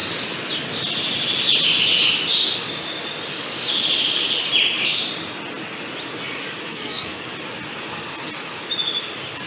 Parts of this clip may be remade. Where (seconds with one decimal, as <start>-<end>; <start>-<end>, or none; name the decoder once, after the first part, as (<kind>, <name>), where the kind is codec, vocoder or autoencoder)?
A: 6.7-7.3 (codec, SNAC)